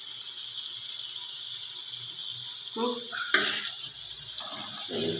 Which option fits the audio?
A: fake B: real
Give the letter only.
B